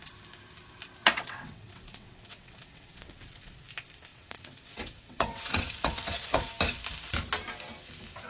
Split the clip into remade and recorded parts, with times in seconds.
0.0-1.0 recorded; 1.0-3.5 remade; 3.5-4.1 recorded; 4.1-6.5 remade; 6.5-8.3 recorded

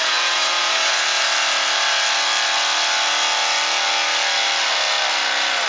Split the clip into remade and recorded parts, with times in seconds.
0.0-1.0 remade; 1.0-5.7 recorded